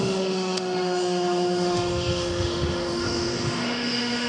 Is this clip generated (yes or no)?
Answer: yes